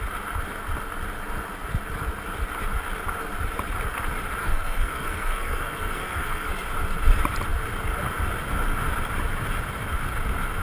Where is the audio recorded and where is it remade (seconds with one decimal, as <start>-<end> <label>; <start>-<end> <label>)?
0.0-4.4 recorded; 4.4-6.5 remade; 6.5-10.6 recorded